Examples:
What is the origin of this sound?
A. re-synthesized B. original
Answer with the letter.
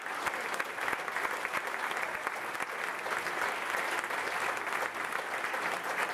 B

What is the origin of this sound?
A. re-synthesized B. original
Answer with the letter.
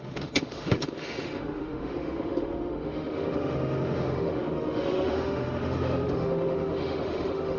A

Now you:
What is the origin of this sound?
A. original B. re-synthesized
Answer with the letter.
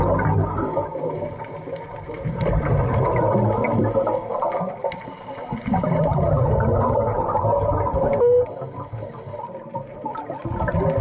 A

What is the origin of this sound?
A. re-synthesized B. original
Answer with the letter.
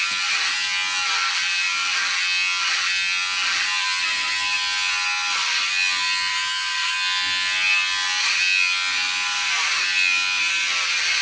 B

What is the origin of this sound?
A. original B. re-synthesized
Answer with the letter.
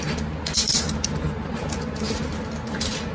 A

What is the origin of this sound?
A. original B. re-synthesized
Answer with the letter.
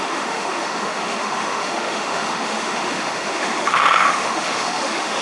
B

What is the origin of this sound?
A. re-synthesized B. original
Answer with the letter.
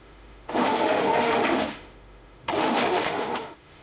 A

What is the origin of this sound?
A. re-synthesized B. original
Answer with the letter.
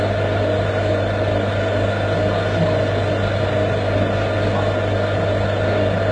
B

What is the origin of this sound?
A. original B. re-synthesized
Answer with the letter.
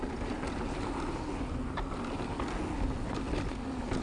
A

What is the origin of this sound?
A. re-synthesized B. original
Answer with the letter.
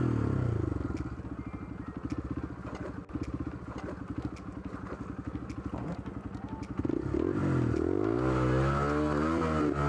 B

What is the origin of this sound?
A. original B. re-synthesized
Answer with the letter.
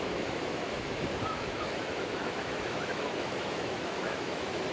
B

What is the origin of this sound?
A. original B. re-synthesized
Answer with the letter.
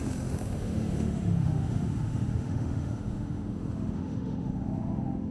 B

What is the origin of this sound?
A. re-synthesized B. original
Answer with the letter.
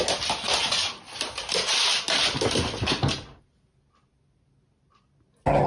B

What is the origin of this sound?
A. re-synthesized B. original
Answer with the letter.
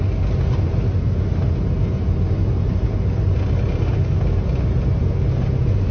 B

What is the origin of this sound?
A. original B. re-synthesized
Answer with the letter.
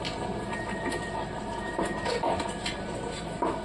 A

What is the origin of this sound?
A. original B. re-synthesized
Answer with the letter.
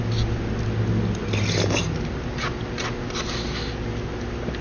A